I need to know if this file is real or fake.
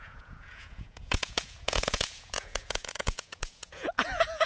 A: fake